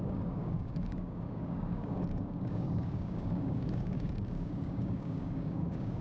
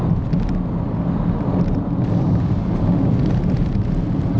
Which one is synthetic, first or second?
first